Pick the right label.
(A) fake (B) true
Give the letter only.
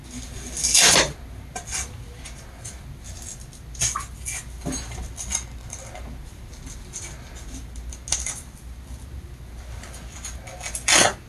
B